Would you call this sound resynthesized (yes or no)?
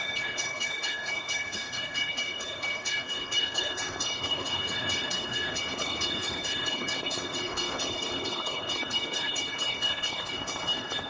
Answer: yes